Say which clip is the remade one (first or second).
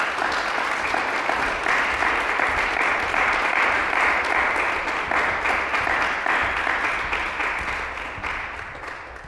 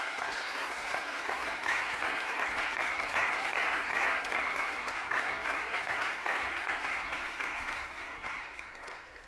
second